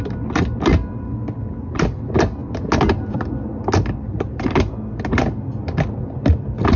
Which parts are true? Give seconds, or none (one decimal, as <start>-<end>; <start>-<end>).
0.0-6.8